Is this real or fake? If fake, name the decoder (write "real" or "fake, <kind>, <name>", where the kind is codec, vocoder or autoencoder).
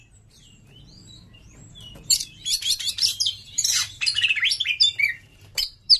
fake, vocoder, BigVGAN v2